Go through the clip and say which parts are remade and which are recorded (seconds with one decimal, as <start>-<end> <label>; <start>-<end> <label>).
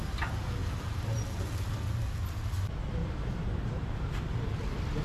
0.0-0.6 recorded; 0.6-1.9 remade; 1.9-3.0 recorded; 3.0-3.9 remade; 3.9-5.0 recorded